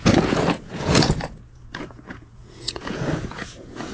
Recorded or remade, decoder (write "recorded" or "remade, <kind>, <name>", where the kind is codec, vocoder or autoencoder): remade, vocoder, Vocos